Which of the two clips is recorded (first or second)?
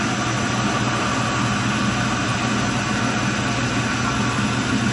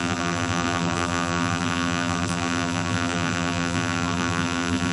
first